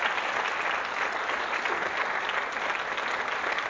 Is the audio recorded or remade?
recorded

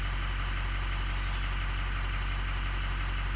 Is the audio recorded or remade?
recorded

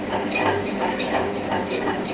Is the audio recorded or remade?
remade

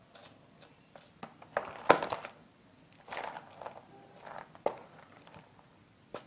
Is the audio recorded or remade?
recorded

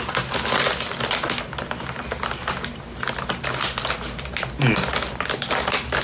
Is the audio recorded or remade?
recorded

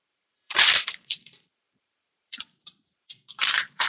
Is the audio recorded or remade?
remade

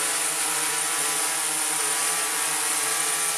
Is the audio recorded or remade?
remade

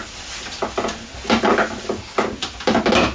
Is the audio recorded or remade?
recorded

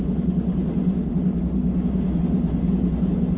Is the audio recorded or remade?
recorded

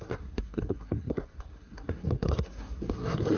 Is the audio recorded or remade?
remade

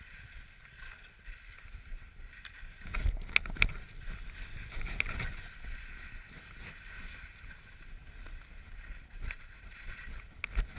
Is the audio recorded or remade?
recorded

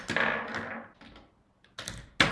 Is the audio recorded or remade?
recorded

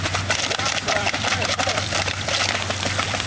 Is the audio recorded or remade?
remade